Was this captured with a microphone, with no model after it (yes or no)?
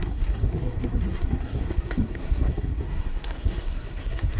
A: no